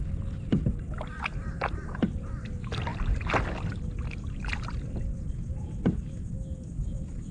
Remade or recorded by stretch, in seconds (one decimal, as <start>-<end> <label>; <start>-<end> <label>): 0.0-7.3 recorded